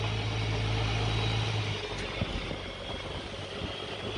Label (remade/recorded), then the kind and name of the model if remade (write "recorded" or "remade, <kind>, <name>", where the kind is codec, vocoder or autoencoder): recorded